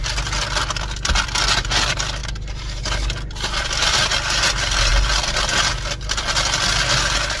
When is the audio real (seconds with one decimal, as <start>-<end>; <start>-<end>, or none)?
0.0-2.2; 2.8-7.4